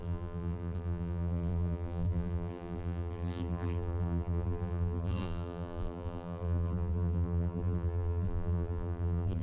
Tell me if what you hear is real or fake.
fake